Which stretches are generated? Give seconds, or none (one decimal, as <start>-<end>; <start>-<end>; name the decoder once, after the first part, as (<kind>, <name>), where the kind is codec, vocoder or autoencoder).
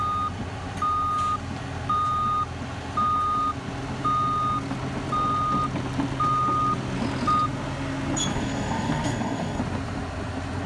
8.3-9.6 (codec, DAC)